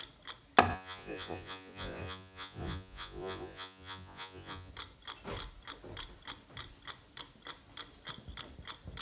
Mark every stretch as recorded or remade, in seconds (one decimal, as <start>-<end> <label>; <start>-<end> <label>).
0.0-0.7 recorded; 0.7-4.7 remade; 4.7-9.0 recorded